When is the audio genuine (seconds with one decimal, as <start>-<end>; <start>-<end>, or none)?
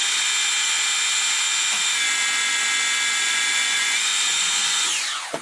0.0-3.2